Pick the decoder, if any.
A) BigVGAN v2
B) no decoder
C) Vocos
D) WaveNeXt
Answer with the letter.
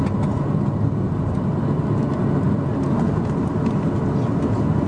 B